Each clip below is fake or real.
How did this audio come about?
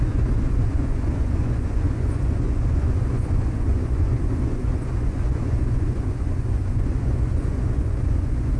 fake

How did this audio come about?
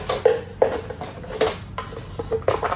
real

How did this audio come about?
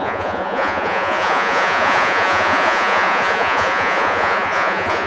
fake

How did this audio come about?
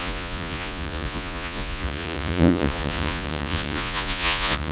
fake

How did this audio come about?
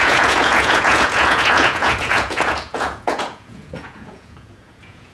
fake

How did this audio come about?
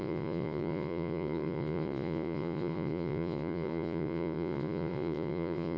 fake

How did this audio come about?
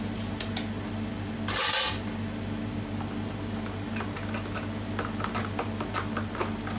real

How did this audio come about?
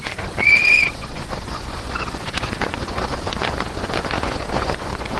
fake